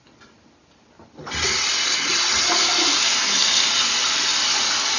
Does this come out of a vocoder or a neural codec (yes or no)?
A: no